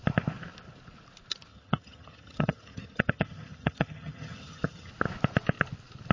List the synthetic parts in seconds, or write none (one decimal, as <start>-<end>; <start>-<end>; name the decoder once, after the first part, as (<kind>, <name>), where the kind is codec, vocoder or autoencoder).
1.5-4.9 (vocoder, HiFi-GAN)